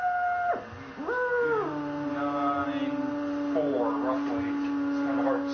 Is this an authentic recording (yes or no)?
yes